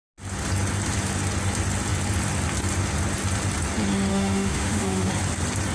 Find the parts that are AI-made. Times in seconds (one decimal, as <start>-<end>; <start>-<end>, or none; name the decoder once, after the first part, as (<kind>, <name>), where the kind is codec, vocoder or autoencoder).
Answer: 4.1-5.1 (autoencoder, DAC-VAE)